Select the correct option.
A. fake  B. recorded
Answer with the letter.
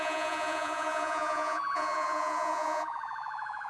A